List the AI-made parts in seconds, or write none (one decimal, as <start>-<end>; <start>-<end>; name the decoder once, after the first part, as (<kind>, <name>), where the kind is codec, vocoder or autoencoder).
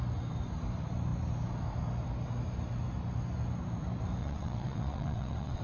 4.2-5.6 (vocoder, WaveNeXt)